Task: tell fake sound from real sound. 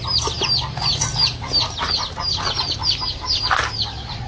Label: real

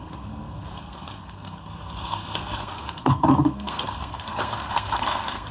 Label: fake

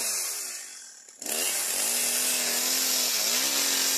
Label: real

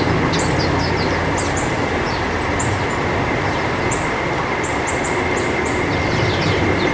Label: real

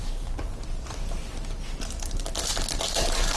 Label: real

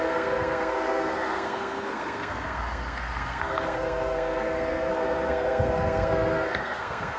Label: fake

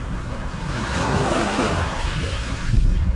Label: fake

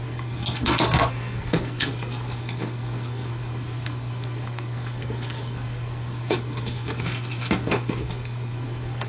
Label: fake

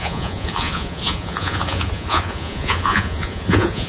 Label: fake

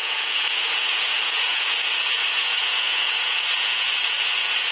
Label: fake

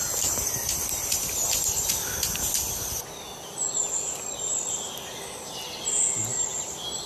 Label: real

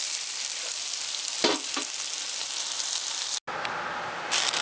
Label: real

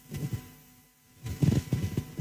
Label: real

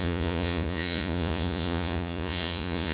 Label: fake